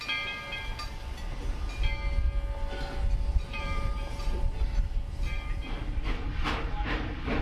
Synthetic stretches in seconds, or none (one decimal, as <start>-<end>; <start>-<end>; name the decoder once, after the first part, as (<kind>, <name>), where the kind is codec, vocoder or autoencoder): 3.3-4.6 (vocoder, BigVGAN v2)